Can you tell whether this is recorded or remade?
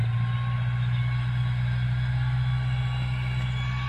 recorded